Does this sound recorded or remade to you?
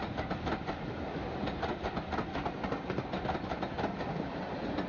recorded